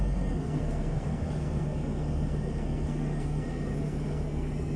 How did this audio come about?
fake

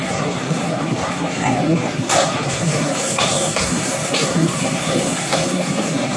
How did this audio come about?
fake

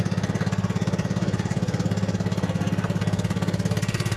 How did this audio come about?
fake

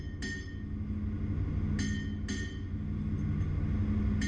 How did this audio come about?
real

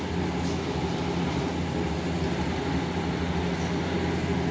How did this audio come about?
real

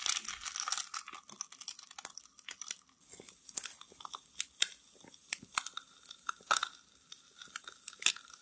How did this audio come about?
real